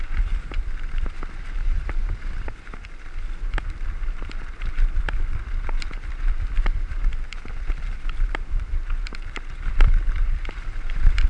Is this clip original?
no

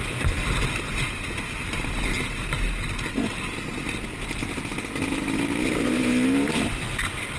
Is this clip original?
yes